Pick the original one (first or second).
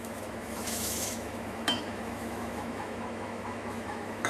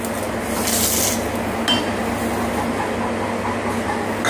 second